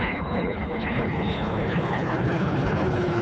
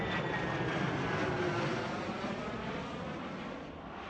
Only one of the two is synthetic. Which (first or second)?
first